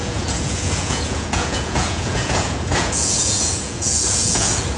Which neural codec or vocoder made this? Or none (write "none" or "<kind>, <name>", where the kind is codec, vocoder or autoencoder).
vocoder, Vocos